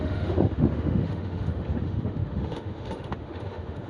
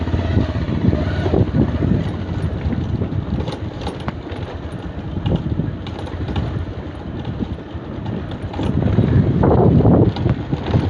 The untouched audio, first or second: second